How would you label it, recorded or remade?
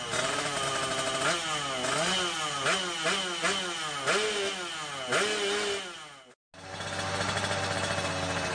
recorded